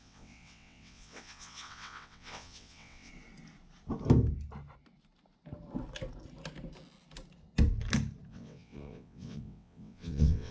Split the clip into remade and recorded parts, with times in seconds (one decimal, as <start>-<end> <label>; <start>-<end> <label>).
0.0-3.1 remade; 3.1-8.3 recorded; 8.3-10.5 remade